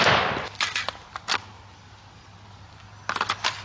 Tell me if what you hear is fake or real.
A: real